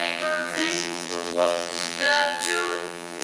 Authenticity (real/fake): fake